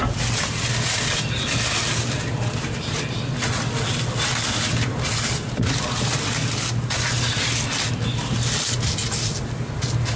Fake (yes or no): no